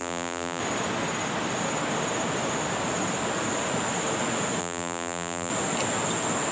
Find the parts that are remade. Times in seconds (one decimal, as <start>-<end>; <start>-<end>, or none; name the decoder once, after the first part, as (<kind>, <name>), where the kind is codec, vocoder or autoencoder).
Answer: 0.0-0.6 (vocoder, BigVGAN v2); 4.6-5.5